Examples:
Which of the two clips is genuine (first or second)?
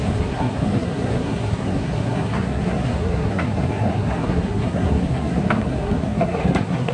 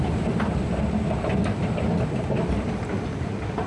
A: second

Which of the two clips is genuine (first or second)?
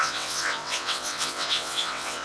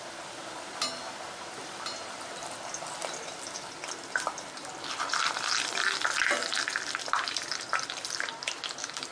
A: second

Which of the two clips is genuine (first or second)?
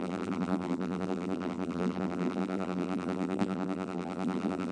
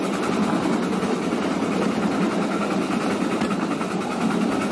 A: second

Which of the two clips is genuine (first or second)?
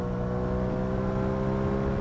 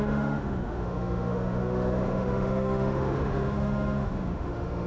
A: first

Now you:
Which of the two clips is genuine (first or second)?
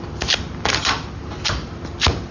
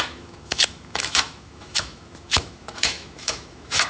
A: first